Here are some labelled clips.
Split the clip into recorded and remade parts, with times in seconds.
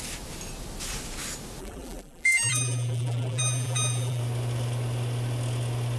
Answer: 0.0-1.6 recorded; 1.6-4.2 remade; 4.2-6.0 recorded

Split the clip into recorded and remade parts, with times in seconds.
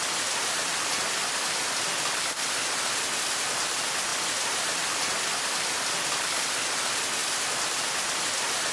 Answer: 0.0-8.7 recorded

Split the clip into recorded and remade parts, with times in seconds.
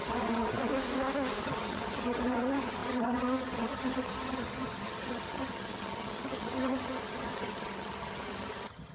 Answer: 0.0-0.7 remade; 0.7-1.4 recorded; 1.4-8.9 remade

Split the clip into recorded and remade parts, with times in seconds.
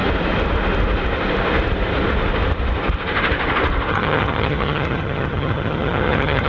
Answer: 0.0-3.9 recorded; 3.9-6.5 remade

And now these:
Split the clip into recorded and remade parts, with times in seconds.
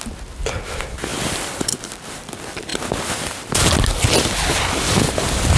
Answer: 0.0-5.6 recorded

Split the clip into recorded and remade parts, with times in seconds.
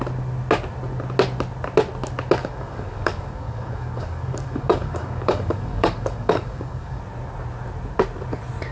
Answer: 0.0-2.4 recorded; 2.4-7.0 remade; 7.0-8.7 recorded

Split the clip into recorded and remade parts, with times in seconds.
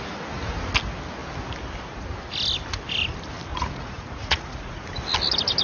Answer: 0.0-3.5 recorded; 3.5-4.8 remade; 4.8-5.6 recorded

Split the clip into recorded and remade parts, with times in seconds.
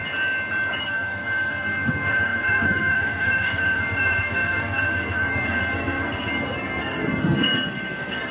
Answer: 0.0-0.8 recorded; 0.8-8.3 remade